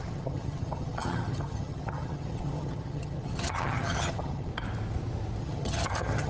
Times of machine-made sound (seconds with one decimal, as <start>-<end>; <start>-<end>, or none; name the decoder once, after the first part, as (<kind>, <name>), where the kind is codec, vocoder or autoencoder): 0.0-4.5 (vocoder, HiFi-GAN); 5.4-6.3